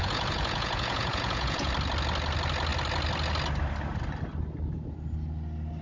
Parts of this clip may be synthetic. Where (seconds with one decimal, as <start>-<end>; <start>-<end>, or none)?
0.0-1.7